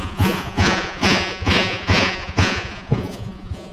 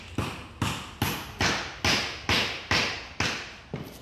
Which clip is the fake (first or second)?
first